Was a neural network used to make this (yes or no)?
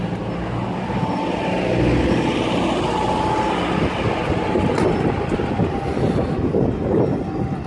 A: no